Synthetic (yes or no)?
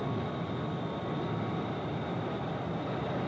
no